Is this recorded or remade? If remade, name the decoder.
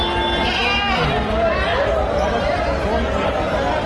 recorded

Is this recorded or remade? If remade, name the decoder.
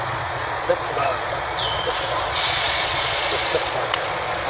remade, vocoder, Vocos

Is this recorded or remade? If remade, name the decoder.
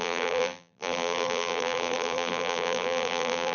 remade, vocoder, BigVGAN v2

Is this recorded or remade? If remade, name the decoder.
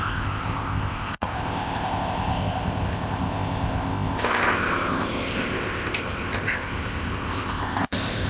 remade, codec, ZipCodec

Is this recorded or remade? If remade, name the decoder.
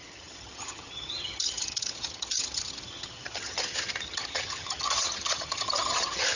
remade, vocoder, HiFi-GAN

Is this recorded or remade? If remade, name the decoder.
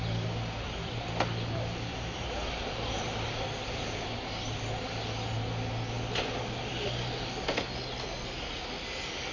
recorded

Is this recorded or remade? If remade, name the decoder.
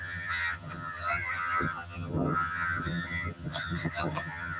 remade, vocoder, HiFi-GAN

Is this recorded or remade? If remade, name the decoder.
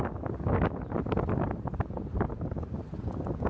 recorded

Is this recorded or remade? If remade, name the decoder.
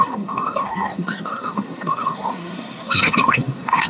remade, codec, SNAC